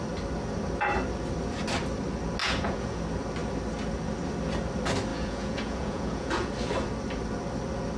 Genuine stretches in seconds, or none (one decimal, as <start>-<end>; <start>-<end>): 0.0-2.4; 3.0-5.1; 6.5-8.0